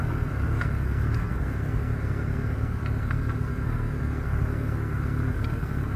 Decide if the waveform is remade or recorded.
remade